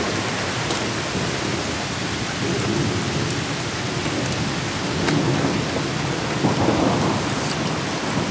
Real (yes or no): yes